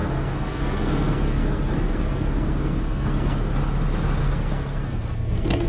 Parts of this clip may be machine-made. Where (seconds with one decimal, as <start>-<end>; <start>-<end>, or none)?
0.0-3.4; 4.2-5.7